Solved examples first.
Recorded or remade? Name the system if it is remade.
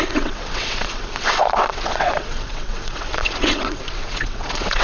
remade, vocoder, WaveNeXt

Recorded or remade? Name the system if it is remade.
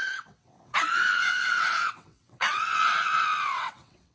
remade, vocoder, WaveNeXt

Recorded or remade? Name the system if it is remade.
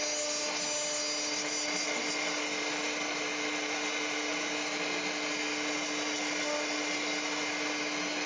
recorded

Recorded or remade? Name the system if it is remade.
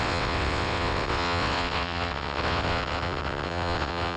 remade, vocoder, WaveNeXt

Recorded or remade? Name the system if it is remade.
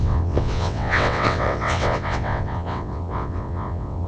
remade, vocoder, WaveNeXt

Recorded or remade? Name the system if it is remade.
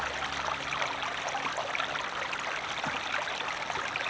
recorded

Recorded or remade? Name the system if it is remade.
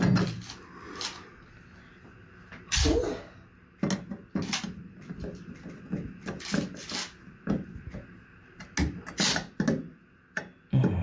recorded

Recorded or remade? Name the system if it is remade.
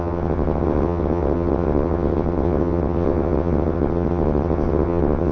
remade, vocoder, WaveNeXt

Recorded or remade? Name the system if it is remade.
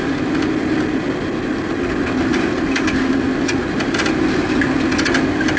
recorded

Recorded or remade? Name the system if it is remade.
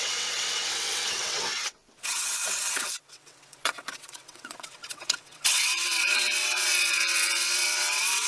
remade, vocoder, WaveNeXt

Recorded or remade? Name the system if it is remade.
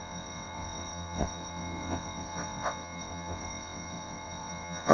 remade, vocoder, WaveNeXt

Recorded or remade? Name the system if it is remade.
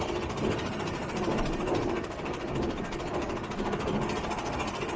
recorded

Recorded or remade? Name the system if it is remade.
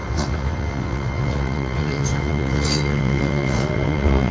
remade, vocoder, WaveNeXt